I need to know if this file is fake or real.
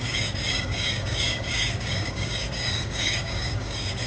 fake